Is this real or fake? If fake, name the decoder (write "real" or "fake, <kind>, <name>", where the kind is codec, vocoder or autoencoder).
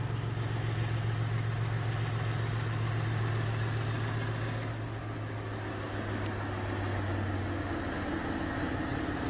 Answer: real